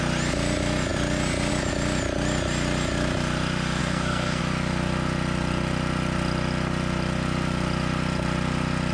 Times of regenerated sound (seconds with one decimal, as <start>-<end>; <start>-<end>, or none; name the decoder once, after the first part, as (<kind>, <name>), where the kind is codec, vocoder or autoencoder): 3.8-4.4 (codec, SNAC)